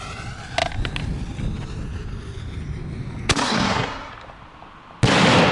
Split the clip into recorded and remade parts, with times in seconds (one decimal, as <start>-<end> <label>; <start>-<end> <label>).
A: 0.0-3.4 recorded; 3.4-4.1 remade; 4.1-5.5 recorded